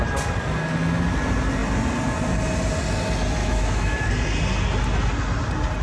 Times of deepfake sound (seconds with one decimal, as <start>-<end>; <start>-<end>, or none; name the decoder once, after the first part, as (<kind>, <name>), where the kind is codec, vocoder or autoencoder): 3.4-4.1 (autoencoder, DAC-VAE)